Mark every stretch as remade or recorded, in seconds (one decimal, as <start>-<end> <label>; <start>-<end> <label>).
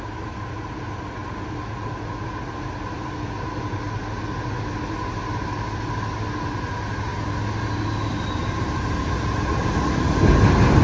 0.0-10.8 recorded